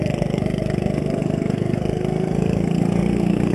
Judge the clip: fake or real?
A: fake